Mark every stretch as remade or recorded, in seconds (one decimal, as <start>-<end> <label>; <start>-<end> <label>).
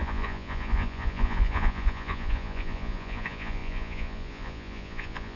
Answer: 0.0-5.4 remade